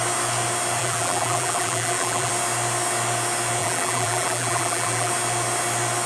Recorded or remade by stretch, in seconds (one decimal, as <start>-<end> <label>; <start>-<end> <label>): 0.0-0.8 recorded; 0.8-2.3 remade; 2.3-3.6 recorded; 3.6-5.1 remade; 5.1-6.1 recorded